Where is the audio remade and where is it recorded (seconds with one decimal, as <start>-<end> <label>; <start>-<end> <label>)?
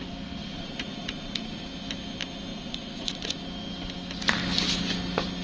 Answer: 0.0-0.4 recorded; 0.4-1.6 remade; 1.6-2.5 recorded; 2.5-3.4 remade; 3.4-5.4 recorded